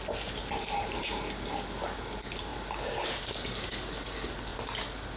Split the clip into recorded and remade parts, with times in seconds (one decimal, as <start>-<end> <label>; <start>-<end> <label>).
0.0-0.4 recorded; 0.4-1.1 remade; 1.1-2.5 recorded; 2.5-3.2 remade; 3.2-5.2 recorded